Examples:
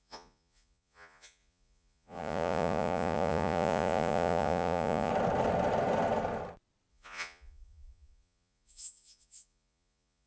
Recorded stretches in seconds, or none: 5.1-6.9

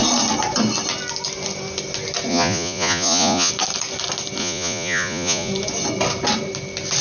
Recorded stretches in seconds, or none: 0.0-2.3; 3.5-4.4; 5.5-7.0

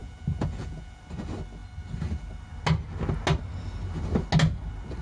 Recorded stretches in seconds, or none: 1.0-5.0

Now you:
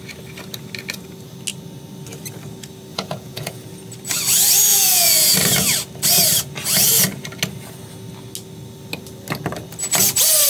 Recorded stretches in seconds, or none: 0.0-2.9; 3.7-4.7; 5.3-10.5

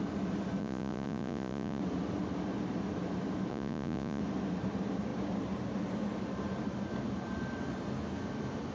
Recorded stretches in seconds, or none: 0.0-0.6; 1.8-3.5; 4.2-8.7

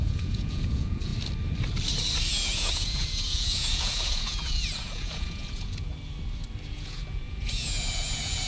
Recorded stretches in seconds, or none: 1.1-2.3; 5.9-6.7

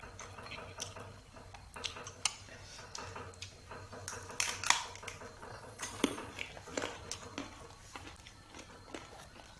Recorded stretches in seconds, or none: 0.0-5.4; 6.3-9.6

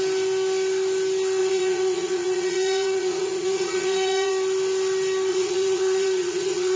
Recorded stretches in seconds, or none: 0.0-1.4; 4.3-5.3